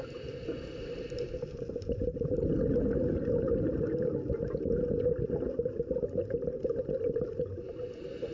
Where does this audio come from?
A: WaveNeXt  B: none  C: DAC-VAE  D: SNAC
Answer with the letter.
B